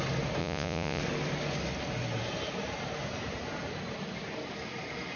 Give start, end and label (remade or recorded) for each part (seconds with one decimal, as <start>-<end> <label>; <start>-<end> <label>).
0.0-0.4 recorded; 0.4-1.0 remade; 1.0-5.2 recorded